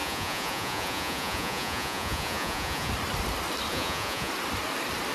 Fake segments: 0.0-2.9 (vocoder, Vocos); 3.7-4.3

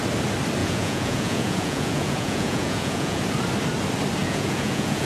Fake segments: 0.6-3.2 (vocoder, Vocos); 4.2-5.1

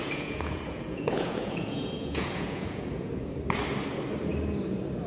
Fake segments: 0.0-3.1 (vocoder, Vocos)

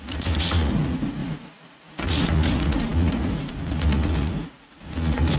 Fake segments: 0.0-5.4 (vocoder, Vocos)

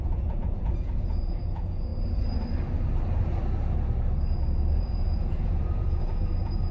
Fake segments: 0.0-1.9 (vocoder, Vocos); 4.7-6.7

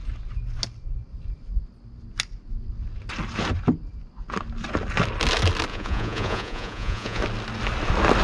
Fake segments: 5.7-7.2 (vocoder, Vocos)

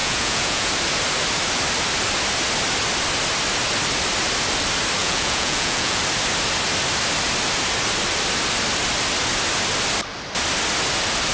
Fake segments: 0.0-0.7 (vocoder, Vocos); 5.0-6.0

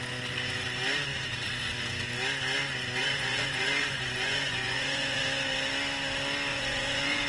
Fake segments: 3.0-5.2 (vocoder, Vocos); 6.5-7.3